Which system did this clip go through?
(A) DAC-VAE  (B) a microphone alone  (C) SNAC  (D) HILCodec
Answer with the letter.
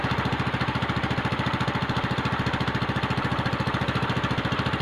B